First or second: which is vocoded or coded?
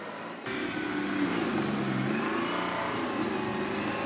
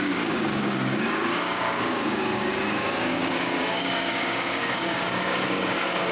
second